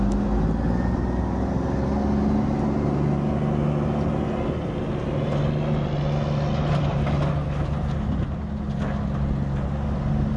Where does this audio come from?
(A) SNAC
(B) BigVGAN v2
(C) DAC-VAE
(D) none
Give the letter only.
D